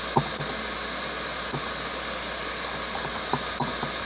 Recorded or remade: recorded